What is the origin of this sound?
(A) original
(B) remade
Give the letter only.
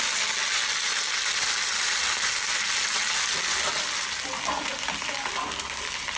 A